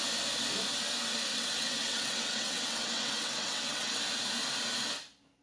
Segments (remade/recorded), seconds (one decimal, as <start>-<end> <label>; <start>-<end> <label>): 0.0-1.3 recorded; 1.3-4.0 remade; 4.0-5.4 recorded